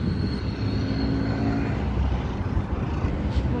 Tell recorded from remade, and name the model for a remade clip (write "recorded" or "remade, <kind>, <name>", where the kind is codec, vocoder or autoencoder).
recorded